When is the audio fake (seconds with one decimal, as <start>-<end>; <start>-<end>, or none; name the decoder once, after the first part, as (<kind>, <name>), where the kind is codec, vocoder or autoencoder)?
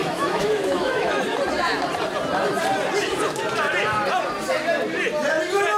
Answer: 0.0-1.2 (autoencoder, DAC-VAE)